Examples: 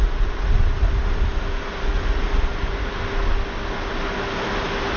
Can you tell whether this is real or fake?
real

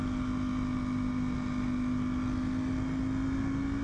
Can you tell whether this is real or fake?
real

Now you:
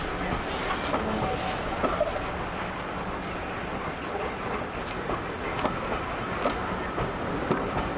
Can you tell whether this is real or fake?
real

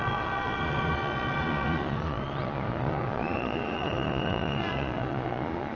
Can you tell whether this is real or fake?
fake